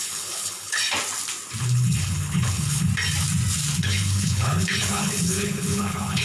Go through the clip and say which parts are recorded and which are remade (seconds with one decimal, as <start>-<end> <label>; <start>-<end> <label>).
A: 0.0-0.8 remade; 0.8-1.6 recorded; 1.6-2.9 remade; 2.9-3.8 recorded; 3.8-6.2 remade